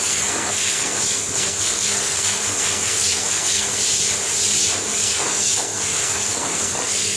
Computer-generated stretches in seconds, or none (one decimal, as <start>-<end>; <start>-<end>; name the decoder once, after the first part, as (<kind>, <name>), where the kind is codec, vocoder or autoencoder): 0.0-3.8 (codec, SNAC); 4.9-7.2